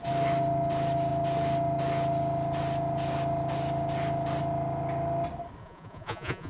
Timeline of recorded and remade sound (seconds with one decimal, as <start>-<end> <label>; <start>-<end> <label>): 0.0-5.6 recorded; 5.6-6.5 remade